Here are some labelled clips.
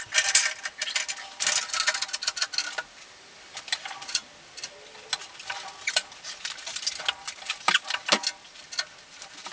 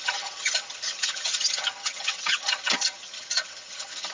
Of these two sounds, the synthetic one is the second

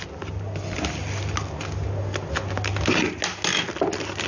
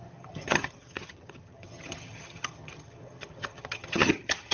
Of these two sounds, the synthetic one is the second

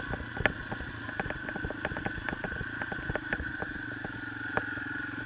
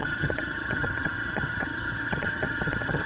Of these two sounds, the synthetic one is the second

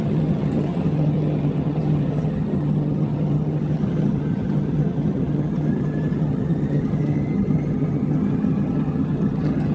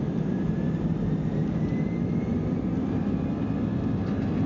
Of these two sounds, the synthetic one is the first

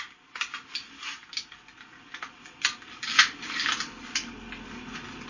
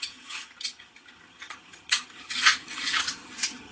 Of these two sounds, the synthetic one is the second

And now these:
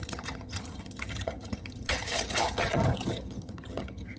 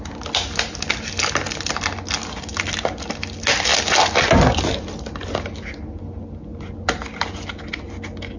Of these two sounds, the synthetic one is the first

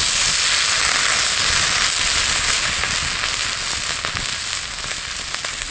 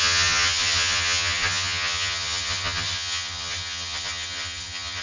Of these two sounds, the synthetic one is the second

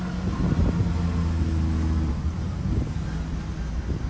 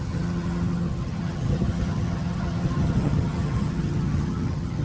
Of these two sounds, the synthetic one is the second